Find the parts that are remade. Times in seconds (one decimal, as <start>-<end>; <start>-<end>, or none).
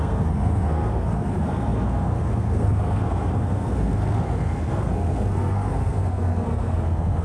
0.0-7.2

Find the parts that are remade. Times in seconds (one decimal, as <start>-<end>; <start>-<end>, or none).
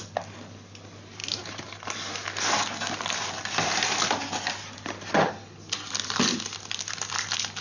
none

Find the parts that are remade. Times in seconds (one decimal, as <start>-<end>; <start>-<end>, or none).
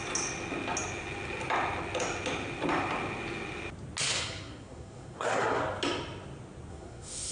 4.1-5.6; 6.7-7.3